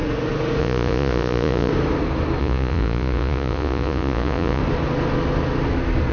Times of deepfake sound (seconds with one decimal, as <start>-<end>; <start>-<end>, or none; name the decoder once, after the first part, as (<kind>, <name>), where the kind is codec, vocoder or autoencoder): 0.6-1.7 (vocoder, Vocos); 2.4-4.6